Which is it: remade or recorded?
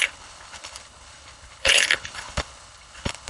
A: remade